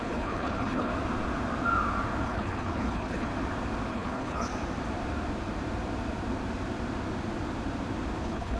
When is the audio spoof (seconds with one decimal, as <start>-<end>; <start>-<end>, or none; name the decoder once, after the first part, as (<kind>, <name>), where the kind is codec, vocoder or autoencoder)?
0.0-0.9 (codec, HILCodec); 2.2-3.3; 3.9-4.5; 8.2-8.6